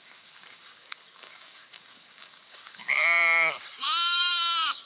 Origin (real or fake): fake